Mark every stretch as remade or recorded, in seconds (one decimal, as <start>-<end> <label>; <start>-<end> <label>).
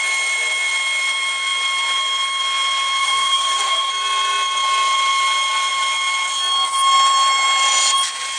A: 0.0-3.0 recorded; 3.0-3.9 remade; 3.9-8.4 recorded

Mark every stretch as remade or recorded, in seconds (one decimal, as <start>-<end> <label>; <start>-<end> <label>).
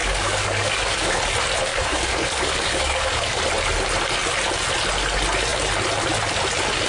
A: 0.0-1.2 remade; 1.2-1.7 recorded; 1.7-3.4 remade; 3.4-6.9 recorded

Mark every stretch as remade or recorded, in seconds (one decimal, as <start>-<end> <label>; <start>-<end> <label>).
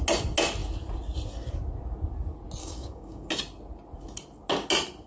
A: 0.0-2.6 recorded; 2.6-3.3 remade; 3.3-5.1 recorded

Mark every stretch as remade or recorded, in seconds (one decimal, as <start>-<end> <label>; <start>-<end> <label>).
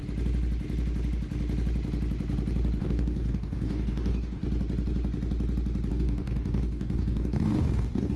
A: 0.0-2.8 recorded; 2.8-4.4 remade; 4.4-5.9 recorded; 5.9-8.2 remade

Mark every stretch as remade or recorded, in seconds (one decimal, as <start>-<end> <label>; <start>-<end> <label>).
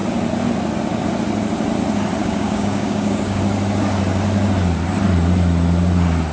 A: 0.0-2.2 recorded; 2.2-3.4 remade; 3.4-6.3 recorded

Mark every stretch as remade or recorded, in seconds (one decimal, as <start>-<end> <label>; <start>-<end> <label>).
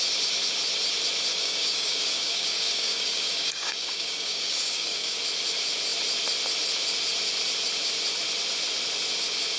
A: 0.0-1.3 recorded; 1.3-5.2 remade; 5.2-9.6 recorded